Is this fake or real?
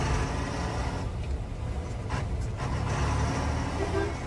real